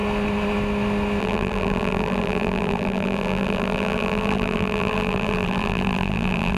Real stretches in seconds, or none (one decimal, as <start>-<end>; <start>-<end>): 0.0-1.2

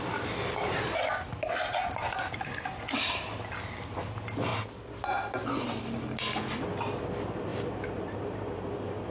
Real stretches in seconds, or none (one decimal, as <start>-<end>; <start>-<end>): 0.0-7.5

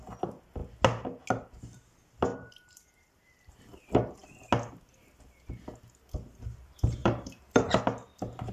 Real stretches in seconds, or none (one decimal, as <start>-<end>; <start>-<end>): 0.0-2.3; 3.5-7.0; 7.8-8.5

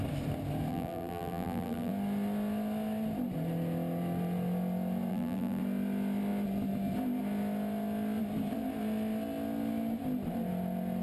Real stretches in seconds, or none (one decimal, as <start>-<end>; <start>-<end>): 0.0-0.7; 1.9-5.1; 5.6-11.0

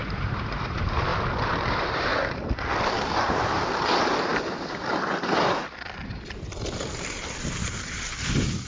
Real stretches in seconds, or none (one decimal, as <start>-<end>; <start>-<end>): 1.1-1.7; 2.1-3.3; 4.3-6.1